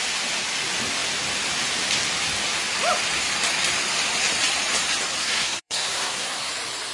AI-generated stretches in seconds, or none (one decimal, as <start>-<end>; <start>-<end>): 5.2-6.5

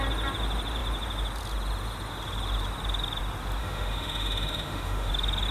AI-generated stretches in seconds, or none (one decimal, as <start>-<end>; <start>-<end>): 3.6-5.1

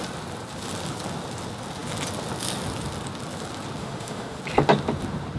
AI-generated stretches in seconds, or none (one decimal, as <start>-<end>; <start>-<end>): 3.8-4.4

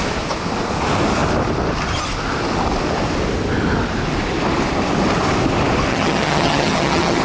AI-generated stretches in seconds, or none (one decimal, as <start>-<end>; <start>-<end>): 5.9-7.2

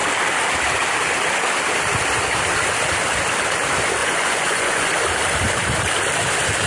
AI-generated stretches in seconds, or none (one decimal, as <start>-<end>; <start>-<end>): 4.0-4.9

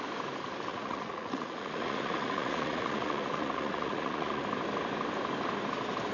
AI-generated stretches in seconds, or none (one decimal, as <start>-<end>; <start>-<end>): 0.7-4.4